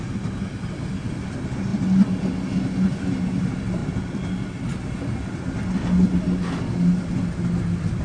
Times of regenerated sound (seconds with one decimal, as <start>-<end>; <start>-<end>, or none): none